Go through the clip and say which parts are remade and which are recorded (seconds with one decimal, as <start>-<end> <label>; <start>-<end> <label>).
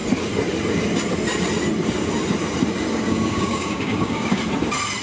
0.0-2.9 recorded; 2.9-4.4 remade; 4.4-5.0 recorded